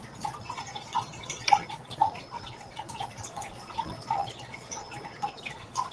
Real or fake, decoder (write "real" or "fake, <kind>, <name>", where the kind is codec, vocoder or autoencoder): fake, vocoder, Vocos